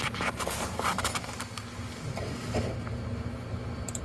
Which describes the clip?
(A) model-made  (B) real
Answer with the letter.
B